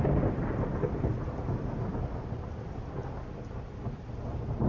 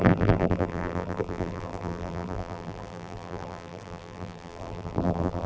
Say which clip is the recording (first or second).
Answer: first